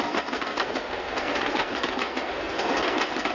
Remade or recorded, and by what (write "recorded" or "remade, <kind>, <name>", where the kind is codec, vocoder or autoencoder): remade, codec, SNAC